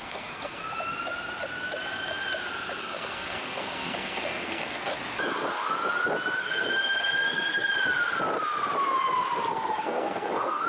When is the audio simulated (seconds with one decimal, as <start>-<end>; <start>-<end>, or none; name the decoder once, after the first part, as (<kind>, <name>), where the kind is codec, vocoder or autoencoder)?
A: 0.0-0.6 (codec, SNAC); 2.8-4.9; 6.4-7.7; 9.5-10.7